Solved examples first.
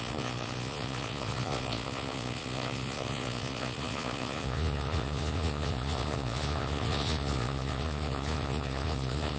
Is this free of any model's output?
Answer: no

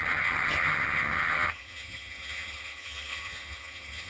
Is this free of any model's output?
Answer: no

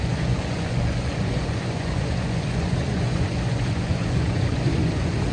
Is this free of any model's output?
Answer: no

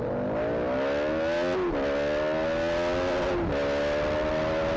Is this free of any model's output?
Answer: yes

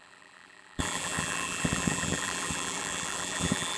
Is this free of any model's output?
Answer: no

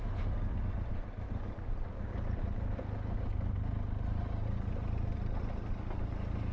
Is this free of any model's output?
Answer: yes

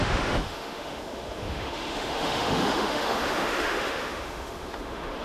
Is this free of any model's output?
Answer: no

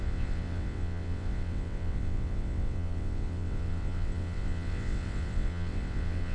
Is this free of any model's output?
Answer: no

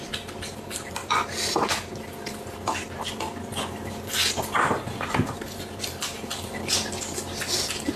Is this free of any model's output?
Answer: no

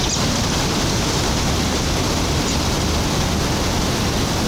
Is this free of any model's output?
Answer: yes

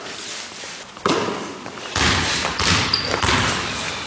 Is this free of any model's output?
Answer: yes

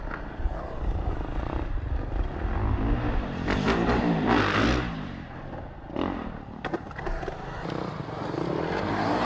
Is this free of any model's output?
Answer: yes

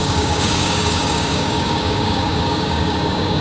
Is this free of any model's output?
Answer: no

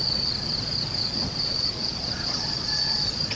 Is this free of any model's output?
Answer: no